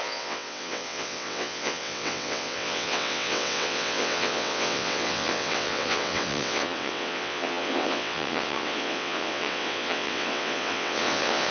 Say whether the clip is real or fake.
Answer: fake